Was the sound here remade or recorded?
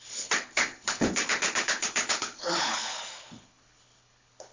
remade